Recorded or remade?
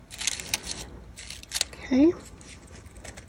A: recorded